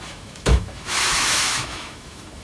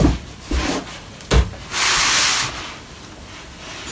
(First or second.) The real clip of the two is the second